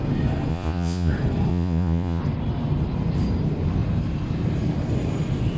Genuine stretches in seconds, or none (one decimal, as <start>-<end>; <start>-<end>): 0.0-0.5; 1.1-1.5; 2.2-5.6